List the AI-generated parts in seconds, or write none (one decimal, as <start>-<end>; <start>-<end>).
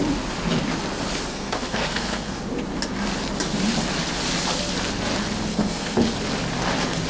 1.3-2.4; 5.5-6.0